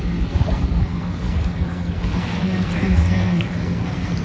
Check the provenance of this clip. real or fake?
fake